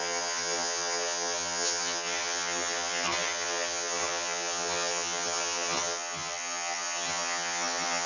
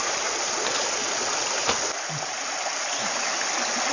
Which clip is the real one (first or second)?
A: second